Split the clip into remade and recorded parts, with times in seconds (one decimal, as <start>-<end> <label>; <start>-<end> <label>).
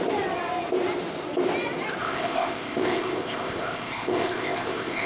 0.0-2.0 recorded; 2.0-5.1 remade